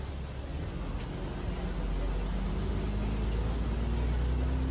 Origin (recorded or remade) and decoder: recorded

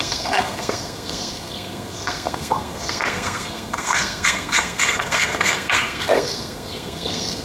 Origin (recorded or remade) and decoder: remade, codec, SNAC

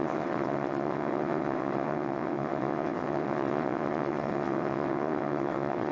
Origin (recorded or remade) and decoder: remade, vocoder, WaveNeXt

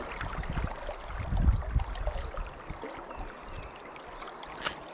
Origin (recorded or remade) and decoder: recorded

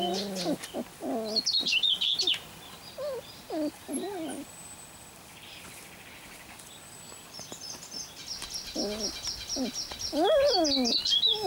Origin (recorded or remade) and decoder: recorded